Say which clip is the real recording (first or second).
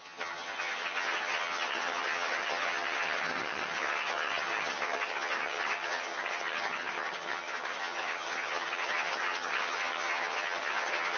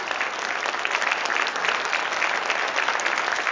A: second